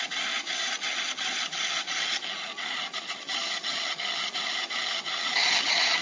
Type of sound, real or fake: fake